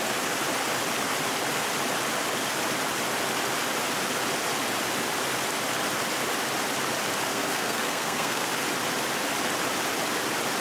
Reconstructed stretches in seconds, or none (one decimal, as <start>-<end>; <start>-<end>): 7.3-8.5